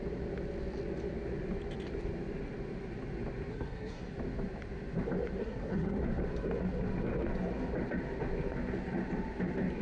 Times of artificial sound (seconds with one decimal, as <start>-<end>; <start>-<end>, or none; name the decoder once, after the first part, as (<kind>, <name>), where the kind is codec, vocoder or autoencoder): 3.5-4.0 (codec, SNAC); 5.4-6.0